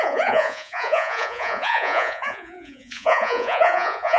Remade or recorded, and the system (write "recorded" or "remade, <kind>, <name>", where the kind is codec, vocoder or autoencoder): remade, vocoder, Vocos